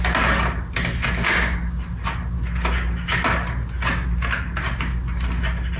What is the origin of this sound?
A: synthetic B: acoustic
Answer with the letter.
B